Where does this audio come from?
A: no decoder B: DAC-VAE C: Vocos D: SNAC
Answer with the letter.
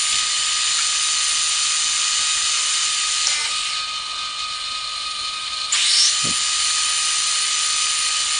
A